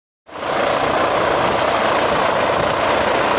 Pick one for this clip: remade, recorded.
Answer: recorded